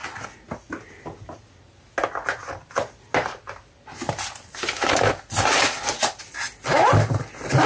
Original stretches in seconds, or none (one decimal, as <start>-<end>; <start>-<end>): 0.0-7.7